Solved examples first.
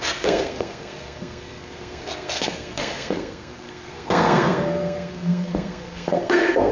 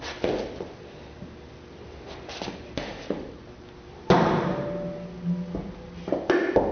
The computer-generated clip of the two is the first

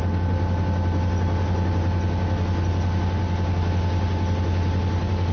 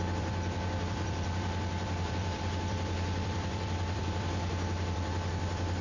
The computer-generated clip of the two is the second